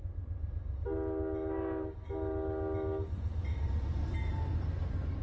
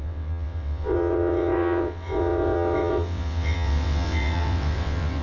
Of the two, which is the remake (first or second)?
second